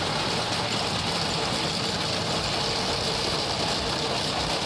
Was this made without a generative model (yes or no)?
yes